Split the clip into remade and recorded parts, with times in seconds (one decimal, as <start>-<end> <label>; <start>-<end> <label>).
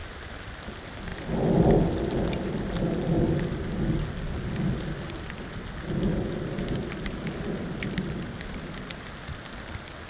0.0-10.1 recorded